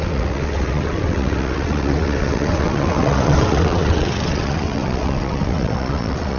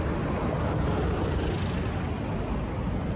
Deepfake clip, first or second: first